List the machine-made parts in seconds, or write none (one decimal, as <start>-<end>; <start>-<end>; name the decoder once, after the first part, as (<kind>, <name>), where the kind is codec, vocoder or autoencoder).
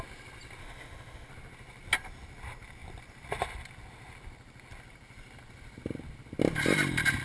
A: 0.6-1.3 (autoencoder, DAC-VAE)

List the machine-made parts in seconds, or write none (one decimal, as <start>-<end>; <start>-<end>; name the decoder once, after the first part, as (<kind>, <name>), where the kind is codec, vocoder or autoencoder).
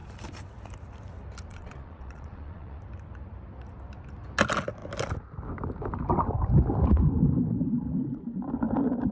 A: 1.5-2.8 (vocoder, Vocos)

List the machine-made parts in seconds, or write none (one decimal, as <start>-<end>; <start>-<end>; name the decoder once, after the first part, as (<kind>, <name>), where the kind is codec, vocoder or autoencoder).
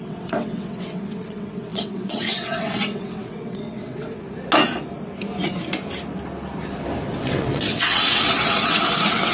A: 0.0-4.2 (vocoder, WaveNeXt); 7.1-9.3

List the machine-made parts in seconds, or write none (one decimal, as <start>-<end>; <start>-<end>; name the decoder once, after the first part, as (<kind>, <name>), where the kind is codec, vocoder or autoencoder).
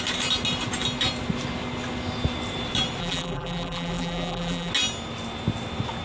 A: 3.0-4.7 (vocoder, BigVGAN v2)